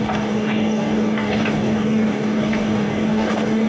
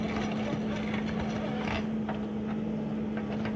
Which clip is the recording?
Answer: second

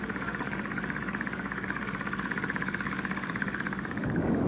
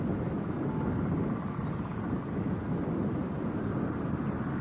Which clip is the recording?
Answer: second